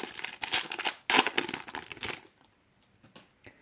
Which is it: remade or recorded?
recorded